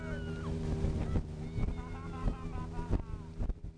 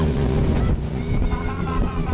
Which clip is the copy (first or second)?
second